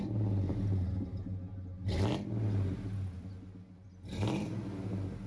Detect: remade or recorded recorded